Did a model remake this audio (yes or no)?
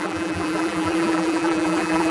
yes